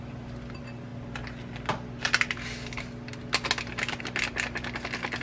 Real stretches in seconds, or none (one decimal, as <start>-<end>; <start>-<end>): 0.0-5.2